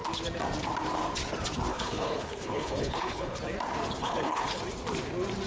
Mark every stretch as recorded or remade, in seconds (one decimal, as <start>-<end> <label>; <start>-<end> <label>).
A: 0.0-1.7 recorded; 1.7-3.4 remade; 3.4-4.0 recorded; 4.0-4.6 remade; 4.6-5.5 recorded